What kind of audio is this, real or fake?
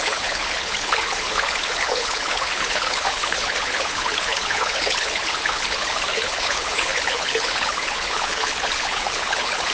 fake